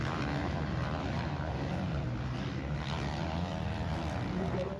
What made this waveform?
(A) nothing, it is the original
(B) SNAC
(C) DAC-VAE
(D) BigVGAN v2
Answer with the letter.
A